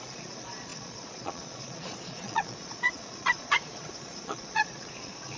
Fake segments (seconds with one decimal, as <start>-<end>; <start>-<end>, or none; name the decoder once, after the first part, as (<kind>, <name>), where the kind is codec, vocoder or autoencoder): 0.0-5.4 (vocoder, Vocos)